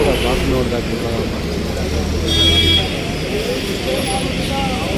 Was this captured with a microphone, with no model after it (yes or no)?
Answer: yes